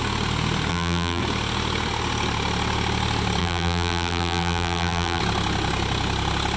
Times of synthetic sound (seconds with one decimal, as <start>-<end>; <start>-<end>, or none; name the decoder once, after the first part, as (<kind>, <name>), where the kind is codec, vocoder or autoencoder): 0.7-1.2 (vocoder, BigVGAN v2); 3.4-5.2